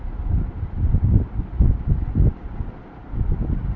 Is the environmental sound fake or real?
real